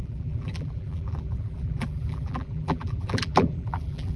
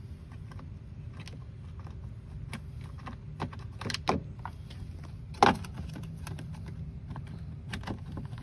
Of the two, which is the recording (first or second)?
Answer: second